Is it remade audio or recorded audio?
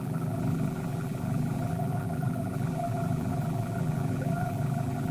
remade